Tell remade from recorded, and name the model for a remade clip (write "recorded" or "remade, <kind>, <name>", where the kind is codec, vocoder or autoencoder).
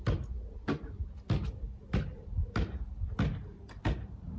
recorded